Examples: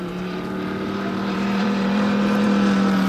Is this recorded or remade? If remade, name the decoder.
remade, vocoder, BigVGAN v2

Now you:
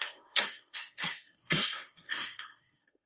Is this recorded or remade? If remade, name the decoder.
remade, codec, SNAC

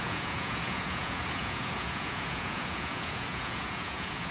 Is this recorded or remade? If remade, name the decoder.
remade, vocoder, Vocos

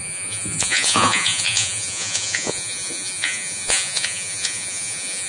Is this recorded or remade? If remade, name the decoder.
remade, vocoder, Vocos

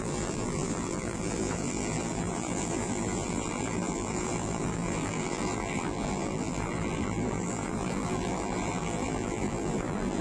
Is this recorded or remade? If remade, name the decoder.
remade, vocoder, BigVGAN v2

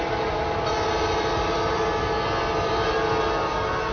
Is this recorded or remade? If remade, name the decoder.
recorded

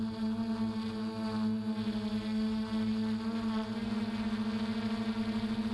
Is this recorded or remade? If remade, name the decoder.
recorded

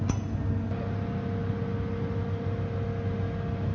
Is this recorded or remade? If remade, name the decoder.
recorded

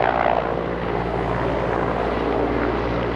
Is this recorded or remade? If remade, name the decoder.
recorded